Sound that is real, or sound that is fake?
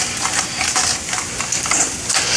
real